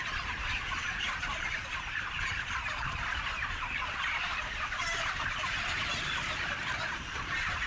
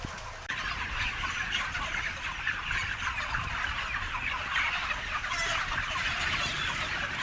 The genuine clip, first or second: second